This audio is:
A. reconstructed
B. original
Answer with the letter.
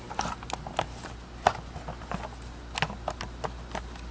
B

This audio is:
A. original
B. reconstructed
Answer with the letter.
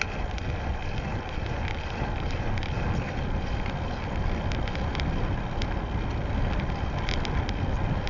A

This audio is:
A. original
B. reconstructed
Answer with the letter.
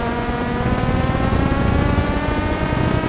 B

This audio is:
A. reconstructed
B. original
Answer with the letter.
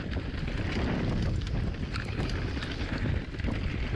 B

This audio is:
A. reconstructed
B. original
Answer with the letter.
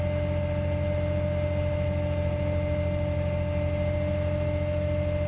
B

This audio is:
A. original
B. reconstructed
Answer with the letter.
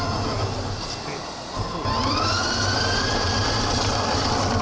A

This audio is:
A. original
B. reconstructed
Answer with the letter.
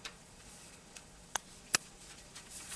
B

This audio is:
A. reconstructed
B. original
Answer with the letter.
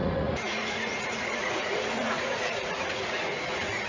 A